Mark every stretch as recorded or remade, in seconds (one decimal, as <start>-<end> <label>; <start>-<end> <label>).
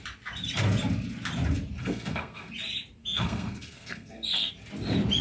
0.0-1.8 recorded; 1.8-2.5 remade; 2.5-3.0 recorded; 3.0-4.5 remade; 4.5-5.2 recorded